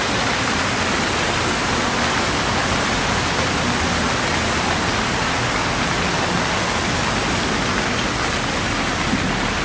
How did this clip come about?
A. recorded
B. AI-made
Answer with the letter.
A